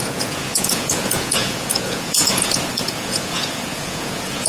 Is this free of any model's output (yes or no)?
no